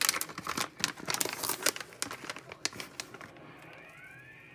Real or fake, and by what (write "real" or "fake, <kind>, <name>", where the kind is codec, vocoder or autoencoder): real